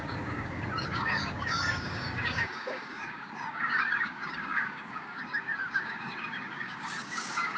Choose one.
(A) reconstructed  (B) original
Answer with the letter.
A